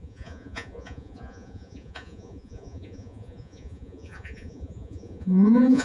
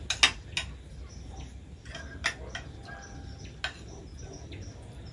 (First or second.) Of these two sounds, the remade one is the first